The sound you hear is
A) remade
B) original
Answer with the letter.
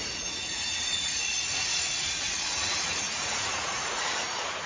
A